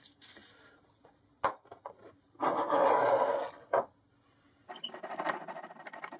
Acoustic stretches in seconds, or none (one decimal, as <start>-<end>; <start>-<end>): 0.0-6.2